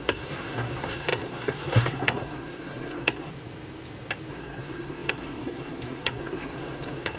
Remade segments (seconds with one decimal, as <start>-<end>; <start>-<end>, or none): 0.0-3.3; 4.3-7.2